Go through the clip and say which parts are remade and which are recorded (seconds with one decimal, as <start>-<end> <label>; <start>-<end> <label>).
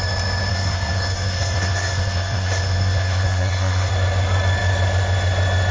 0.0-0.5 recorded; 0.5-3.9 remade; 3.9-5.7 recorded